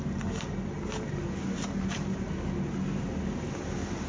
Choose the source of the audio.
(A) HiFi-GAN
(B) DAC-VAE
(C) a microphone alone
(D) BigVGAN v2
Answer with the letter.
C